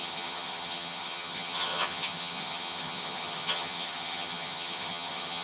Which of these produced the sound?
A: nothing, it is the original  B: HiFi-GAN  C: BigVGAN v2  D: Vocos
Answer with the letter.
B